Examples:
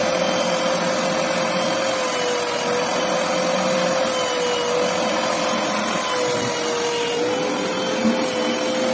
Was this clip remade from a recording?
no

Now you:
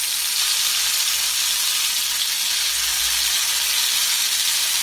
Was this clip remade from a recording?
no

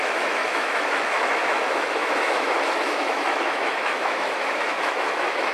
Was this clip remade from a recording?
yes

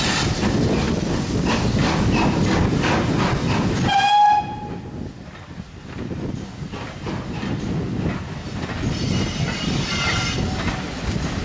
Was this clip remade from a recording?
no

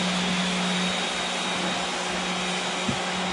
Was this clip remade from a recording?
no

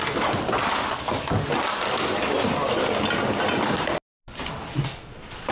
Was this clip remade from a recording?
no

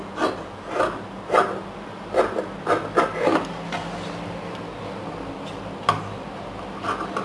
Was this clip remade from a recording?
no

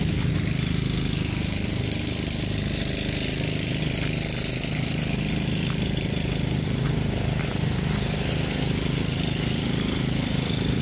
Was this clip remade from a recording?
no